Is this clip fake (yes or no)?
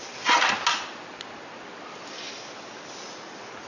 no